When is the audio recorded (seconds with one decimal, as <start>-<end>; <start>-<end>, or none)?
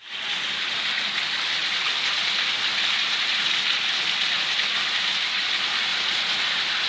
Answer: 0.0-5.9; 6.5-6.9